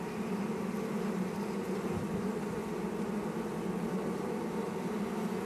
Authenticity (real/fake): real